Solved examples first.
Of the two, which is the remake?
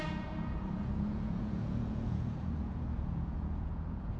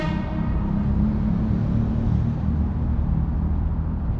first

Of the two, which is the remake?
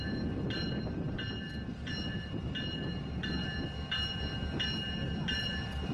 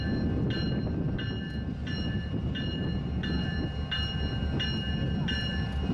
first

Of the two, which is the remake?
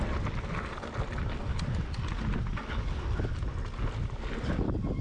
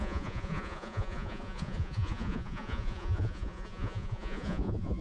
second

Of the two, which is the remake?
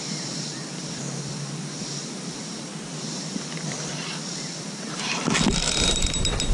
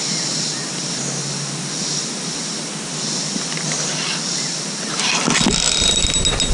first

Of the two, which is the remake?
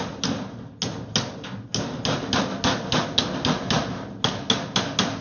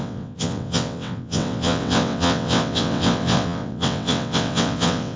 second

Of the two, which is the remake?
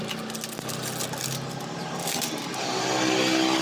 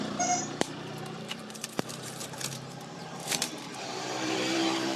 second